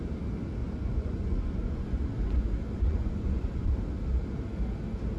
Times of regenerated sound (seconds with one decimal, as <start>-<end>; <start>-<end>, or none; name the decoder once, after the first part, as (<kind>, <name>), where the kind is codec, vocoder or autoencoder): 0.6-3.7 (vocoder, Vocos)